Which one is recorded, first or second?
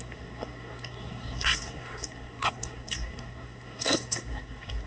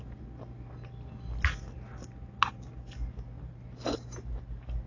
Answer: second